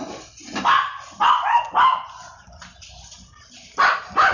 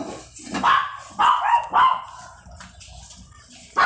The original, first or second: second